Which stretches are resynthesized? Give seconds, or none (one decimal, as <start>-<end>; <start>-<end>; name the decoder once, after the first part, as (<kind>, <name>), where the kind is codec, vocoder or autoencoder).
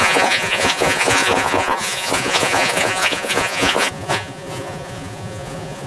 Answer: 0.0-5.9 (vocoder, Vocos)